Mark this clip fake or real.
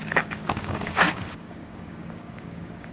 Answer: fake